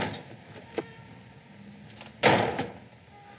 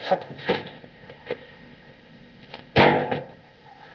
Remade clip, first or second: second